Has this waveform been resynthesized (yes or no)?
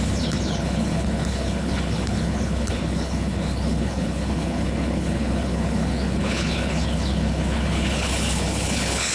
yes